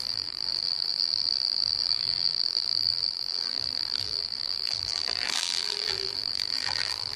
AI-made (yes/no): yes